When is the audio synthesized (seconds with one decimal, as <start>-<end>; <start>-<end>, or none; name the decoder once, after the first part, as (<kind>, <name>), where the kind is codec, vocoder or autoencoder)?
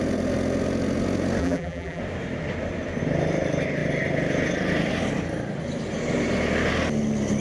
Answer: 1.4-2.0 (vocoder, BigVGAN v2)